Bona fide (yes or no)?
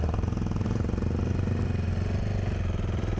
yes